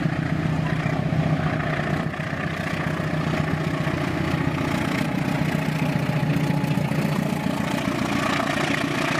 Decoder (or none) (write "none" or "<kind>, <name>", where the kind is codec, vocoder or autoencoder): none